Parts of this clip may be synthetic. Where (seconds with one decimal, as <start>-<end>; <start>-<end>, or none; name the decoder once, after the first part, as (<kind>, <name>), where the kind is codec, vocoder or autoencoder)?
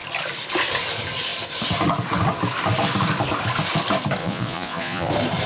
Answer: 4.2-5.1 (vocoder, Vocos)